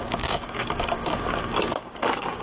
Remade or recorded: remade